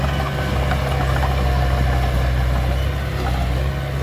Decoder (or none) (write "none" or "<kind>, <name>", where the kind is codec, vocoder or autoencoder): none